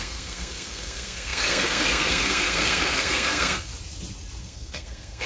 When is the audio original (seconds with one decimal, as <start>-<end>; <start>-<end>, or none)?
3.7-4.4